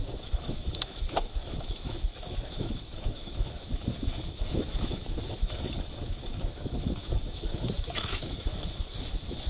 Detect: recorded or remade remade